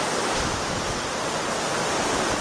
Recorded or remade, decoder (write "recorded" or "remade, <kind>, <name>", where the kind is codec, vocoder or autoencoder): recorded